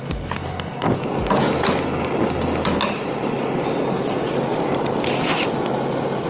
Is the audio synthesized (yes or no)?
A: no